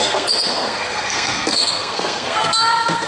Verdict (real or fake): fake